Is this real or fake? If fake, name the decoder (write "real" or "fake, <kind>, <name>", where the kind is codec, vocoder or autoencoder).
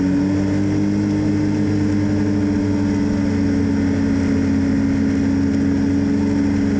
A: real